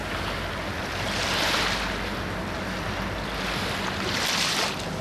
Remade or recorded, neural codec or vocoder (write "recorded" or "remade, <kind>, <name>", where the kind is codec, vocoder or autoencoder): recorded